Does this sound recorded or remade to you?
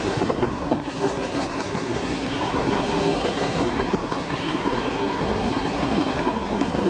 remade